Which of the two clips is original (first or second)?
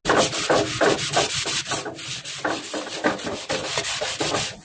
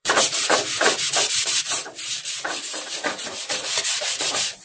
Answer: first